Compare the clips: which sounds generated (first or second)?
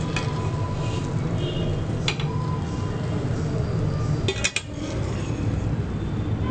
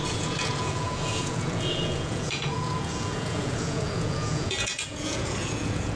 second